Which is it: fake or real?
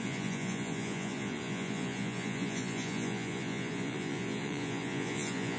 fake